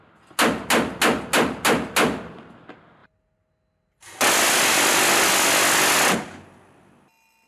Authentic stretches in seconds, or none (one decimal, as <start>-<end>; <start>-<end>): 0.0-7.5